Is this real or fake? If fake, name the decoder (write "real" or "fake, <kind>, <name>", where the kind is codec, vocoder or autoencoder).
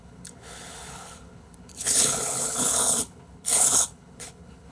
fake, codec, HILCodec